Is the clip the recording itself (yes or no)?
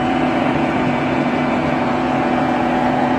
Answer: no